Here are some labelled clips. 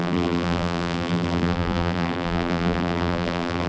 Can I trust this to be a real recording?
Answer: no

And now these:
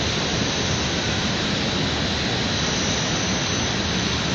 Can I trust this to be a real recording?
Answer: yes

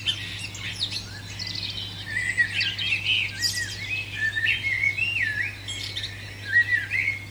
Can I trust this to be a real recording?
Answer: yes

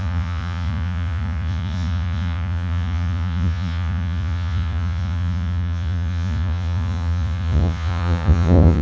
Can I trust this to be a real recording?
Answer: no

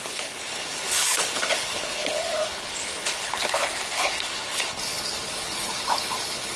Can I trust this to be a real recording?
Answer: no